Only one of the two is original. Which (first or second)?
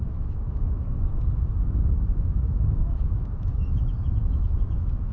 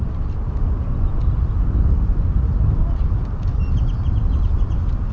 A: second